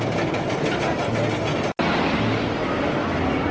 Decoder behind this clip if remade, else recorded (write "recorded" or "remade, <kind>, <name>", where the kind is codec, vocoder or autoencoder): recorded